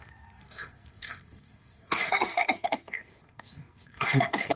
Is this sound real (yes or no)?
no